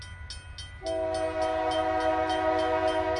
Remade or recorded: recorded